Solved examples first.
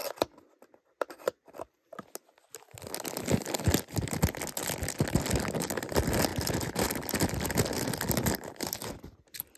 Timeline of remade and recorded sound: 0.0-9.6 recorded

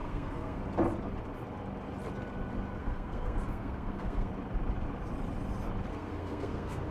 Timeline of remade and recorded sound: 0.0-0.6 remade; 0.6-2.8 recorded; 2.8-4.3 remade; 4.3-5.9 recorded; 5.9-6.9 remade

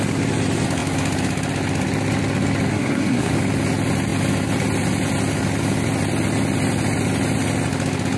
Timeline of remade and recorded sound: 0.0-2.7 recorded; 2.7-3.3 remade; 3.3-8.2 recorded

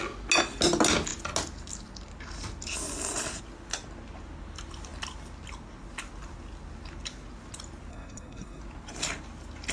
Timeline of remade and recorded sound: 0.0-7.9 recorded; 7.9-8.6 remade; 8.6-9.7 recorded